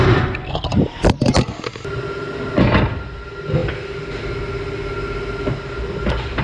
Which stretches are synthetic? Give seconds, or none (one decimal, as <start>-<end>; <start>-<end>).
none